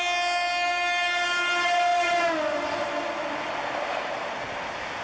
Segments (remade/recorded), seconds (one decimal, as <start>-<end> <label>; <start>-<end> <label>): 0.0-5.0 recorded